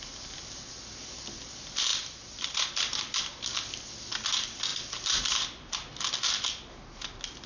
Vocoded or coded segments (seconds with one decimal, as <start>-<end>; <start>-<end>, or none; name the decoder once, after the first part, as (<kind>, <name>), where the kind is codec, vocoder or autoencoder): none